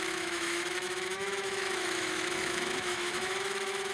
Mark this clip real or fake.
fake